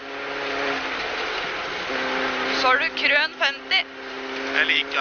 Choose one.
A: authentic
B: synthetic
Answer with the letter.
A